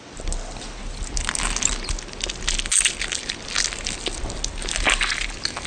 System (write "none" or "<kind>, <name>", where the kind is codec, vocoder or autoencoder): none